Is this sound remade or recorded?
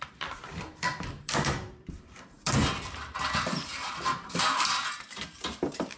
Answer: remade